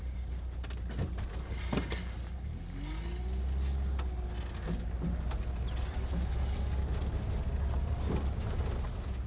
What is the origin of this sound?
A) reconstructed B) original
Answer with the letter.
B